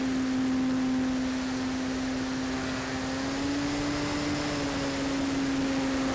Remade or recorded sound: recorded